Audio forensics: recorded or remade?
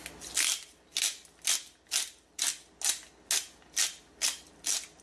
recorded